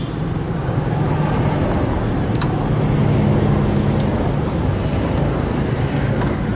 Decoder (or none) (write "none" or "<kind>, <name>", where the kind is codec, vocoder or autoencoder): none